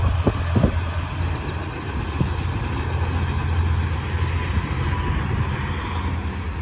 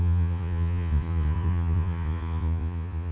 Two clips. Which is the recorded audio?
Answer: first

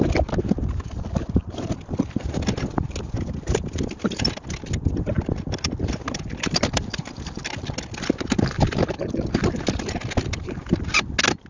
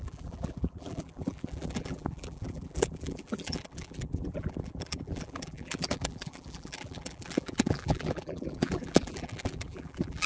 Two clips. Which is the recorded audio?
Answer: first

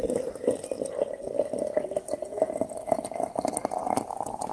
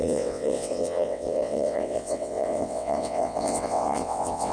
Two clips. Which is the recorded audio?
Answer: first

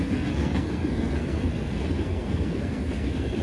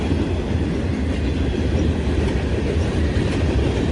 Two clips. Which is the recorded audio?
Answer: second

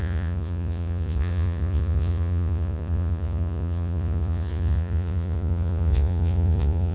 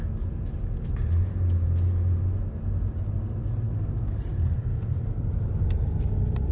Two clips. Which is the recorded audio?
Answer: second